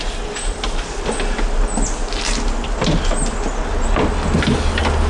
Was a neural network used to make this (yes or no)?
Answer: no